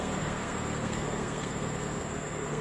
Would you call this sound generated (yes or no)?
yes